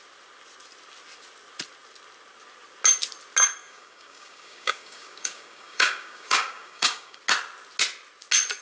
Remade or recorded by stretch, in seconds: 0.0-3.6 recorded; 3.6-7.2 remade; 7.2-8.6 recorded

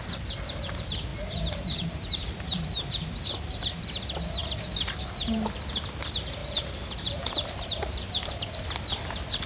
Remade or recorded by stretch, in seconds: 0.0-1.1 recorded; 1.1-3.8 remade; 3.8-6.4 recorded; 6.4-8.3 remade; 8.3-9.5 recorded